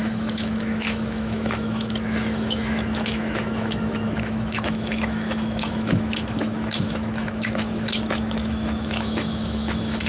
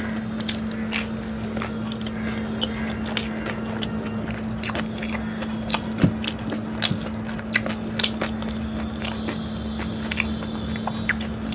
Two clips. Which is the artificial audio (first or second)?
first